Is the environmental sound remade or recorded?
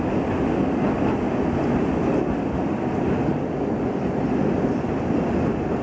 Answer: recorded